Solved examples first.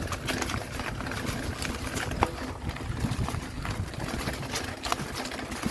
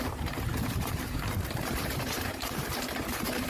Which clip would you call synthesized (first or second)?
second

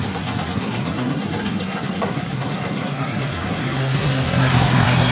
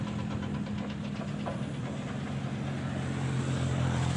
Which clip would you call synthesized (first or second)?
first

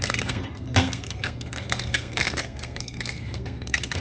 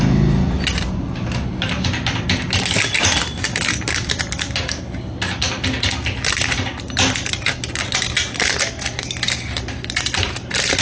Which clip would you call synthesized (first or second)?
first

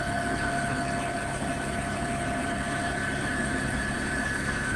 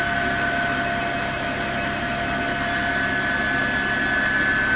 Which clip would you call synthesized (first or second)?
first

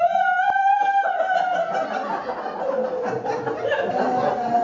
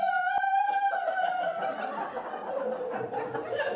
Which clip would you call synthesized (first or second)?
second